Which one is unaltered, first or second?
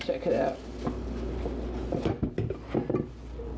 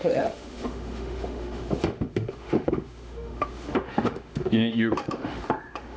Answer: first